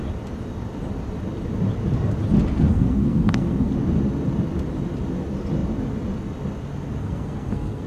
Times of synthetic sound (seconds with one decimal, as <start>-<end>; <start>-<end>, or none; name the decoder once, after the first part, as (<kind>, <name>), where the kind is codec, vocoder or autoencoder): 2.7-3.7 (codec, SNAC); 7.0-7.9